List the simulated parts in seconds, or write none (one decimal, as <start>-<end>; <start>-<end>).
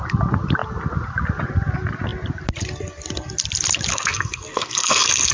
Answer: 3.9-5.3